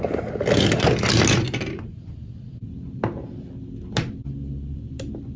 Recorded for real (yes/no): yes